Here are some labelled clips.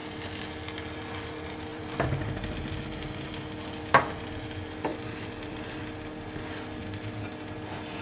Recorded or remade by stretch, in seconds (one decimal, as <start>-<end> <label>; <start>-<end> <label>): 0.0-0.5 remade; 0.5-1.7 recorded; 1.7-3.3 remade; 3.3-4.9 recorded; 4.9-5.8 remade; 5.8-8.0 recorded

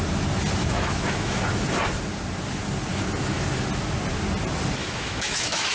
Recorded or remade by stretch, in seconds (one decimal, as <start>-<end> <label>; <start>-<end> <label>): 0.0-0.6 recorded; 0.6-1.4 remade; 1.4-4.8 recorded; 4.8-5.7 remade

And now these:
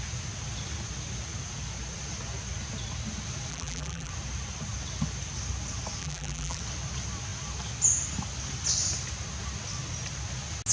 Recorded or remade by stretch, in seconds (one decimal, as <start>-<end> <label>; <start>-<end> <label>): 0.0-3.5 recorded; 3.5-4.1 remade; 4.1-6.0 recorded; 6.0-6.6 remade; 6.6-10.7 recorded

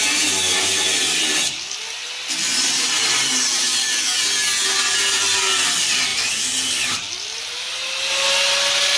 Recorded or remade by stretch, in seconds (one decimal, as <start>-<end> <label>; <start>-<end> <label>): 0.0-9.0 recorded

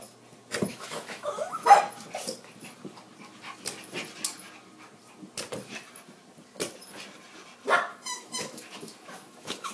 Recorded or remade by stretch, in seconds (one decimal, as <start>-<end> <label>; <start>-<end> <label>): 0.0-0.7 recorded; 0.7-1.8 remade; 1.8-7.9 recorded; 7.9-9.7 remade

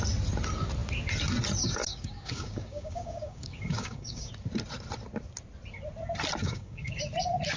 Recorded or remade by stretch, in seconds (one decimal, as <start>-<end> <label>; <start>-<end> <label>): 0.0-1.9 recorded; 1.9-4.3 remade; 4.3-6.4 recorded; 6.4-7.0 remade; 7.0-7.6 recorded